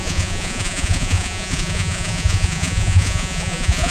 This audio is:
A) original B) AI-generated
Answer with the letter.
B